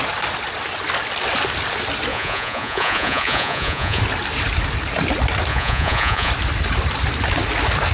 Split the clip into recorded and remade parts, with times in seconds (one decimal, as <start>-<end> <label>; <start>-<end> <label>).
0.0-2.1 recorded; 2.1-4.0 remade; 4.0-5.5 recorded; 5.5-6.3 remade; 6.3-7.9 recorded